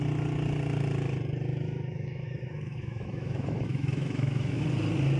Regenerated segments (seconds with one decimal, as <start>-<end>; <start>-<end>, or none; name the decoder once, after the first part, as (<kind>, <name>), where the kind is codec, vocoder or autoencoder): 1.5-4.6 (autoencoder, DAC-VAE)